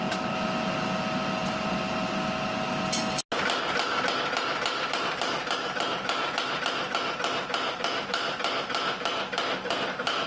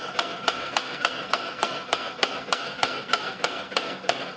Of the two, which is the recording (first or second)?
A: first